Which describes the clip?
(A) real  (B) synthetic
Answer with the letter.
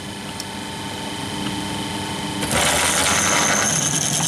A